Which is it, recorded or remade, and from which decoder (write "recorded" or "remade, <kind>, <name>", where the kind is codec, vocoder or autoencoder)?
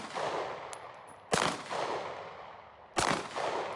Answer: recorded